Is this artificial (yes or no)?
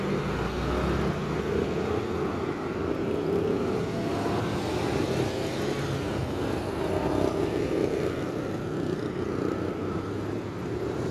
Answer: no